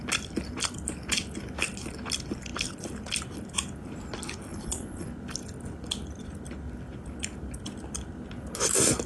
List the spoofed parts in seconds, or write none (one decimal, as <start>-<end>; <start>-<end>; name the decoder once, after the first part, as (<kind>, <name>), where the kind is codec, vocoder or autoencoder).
4.5-5.1 (vocoder, Vocos)